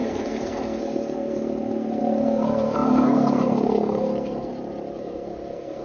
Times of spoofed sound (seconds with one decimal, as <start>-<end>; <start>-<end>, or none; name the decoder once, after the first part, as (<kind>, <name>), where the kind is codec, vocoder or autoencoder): 0.0-4.5 (codec, SNAC); 5.0-5.8